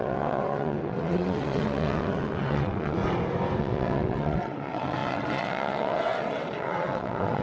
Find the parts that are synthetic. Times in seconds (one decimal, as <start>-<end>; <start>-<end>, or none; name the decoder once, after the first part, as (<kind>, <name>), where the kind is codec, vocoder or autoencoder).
0.0-3.0 (vocoder, WaveNeXt); 3.6-7.4